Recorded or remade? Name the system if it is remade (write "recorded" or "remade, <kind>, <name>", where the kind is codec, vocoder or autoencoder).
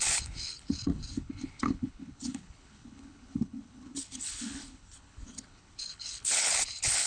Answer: remade, codec, HILCodec